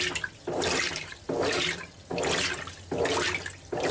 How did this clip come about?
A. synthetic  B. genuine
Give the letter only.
B